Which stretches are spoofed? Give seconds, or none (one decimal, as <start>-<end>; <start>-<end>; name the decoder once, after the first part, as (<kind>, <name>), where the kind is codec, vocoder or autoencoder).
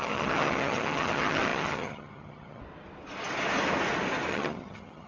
0.0-2.6 (vocoder, HiFi-GAN); 4.3-5.1